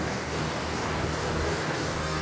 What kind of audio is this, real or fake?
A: fake